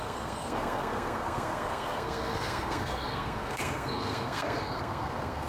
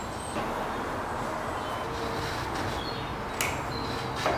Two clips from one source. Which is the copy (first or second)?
first